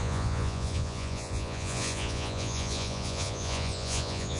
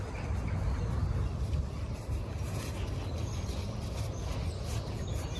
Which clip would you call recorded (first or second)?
second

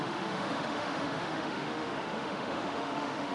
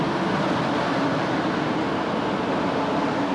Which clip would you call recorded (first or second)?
second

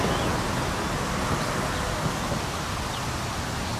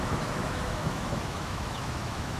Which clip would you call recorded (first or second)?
first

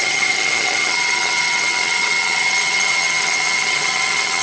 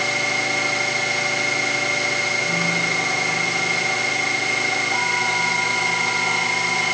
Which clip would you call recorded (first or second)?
second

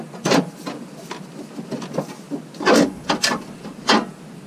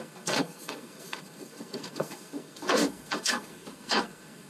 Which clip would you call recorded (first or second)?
first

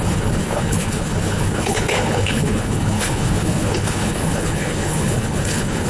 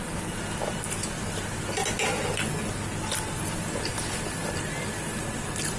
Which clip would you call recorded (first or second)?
second